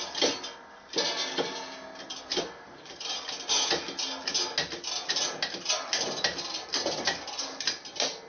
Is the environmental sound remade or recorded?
recorded